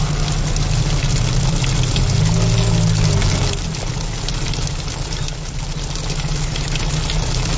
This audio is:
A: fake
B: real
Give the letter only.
B